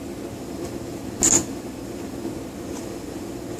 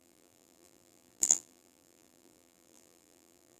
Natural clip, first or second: first